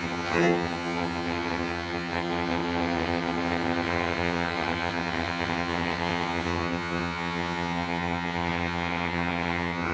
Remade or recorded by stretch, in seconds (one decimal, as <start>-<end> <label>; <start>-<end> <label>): 0.0-9.9 remade